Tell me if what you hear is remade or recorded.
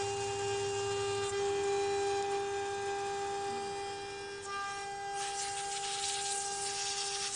recorded